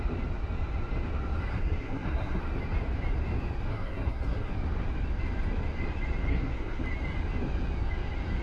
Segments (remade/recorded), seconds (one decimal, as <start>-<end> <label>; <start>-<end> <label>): 0.0-1.5 recorded; 1.5-2.4 remade; 2.4-3.7 recorded; 3.7-4.5 remade; 4.5-6.3 recorded; 6.3-6.8 remade; 6.8-8.4 recorded